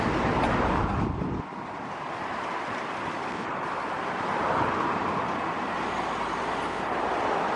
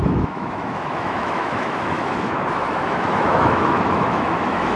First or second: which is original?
first